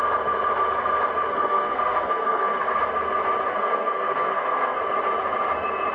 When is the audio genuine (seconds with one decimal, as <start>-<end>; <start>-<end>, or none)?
0.0-1.3; 2.8-3.5; 4.8-5.9